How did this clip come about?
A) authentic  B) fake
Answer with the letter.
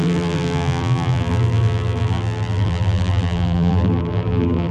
B